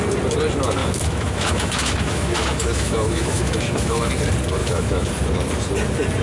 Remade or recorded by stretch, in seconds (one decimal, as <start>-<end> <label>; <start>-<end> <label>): 0.0-0.8 recorded; 0.8-4.1 remade; 4.1-4.6 recorded; 4.6-5.1 remade; 5.1-6.2 recorded